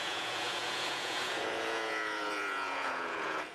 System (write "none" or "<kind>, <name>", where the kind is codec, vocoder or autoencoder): vocoder, Vocos